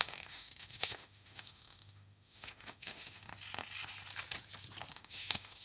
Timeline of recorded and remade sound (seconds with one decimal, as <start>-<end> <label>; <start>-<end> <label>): 0.0-3.3 remade; 3.3-4.9 recorded; 4.9-5.6 remade